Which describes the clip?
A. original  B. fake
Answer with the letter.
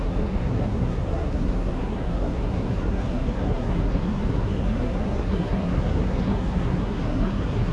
B